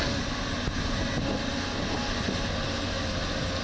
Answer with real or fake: real